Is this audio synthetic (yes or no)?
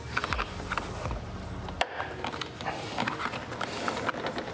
no